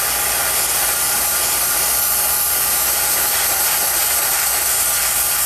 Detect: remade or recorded remade